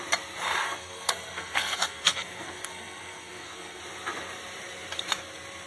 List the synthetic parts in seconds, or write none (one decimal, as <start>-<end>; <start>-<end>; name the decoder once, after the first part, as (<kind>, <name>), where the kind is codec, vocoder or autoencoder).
0.6-3.8 (codec, SNAC)